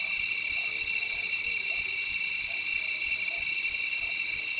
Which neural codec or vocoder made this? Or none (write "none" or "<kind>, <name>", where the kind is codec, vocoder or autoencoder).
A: none